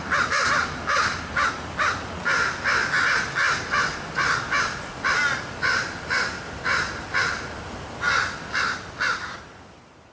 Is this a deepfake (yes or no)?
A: no